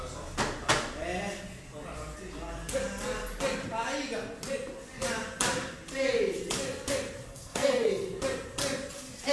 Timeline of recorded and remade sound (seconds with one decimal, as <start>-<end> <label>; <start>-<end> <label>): 0.0-7.3 recorded; 7.3-7.9 remade; 7.9-9.3 recorded